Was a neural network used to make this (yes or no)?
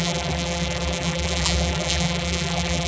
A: yes